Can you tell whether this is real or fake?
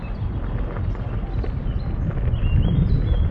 real